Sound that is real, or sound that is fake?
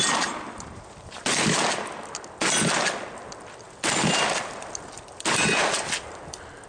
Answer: real